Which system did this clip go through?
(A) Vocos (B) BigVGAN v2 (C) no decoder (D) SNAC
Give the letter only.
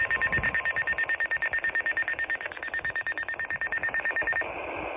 C